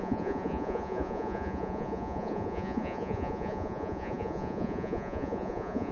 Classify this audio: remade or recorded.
remade